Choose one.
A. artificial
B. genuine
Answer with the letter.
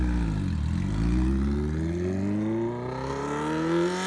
B